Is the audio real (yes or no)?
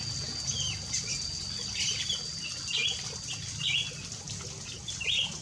yes